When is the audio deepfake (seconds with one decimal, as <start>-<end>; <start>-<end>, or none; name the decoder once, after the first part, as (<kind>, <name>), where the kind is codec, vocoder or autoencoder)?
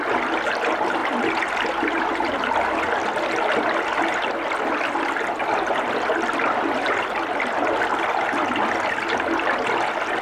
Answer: none